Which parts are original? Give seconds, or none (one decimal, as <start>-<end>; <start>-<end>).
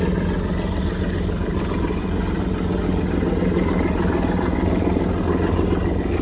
0.0-6.2